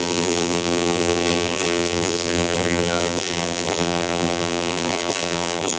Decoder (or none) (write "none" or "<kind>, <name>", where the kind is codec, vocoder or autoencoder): vocoder, BigVGAN v2